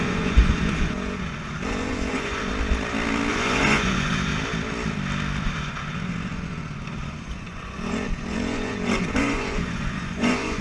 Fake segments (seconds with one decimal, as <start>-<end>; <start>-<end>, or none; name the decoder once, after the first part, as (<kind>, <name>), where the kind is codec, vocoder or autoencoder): 0.0-2.5 (vocoder, Vocos); 3.3-4.3; 5.4-10.6